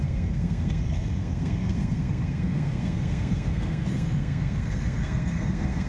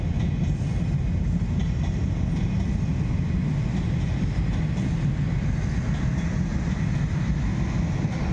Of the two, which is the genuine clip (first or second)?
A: second